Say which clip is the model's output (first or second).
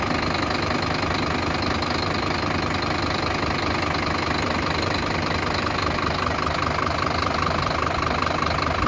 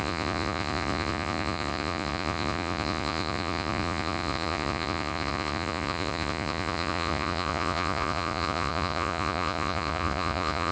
second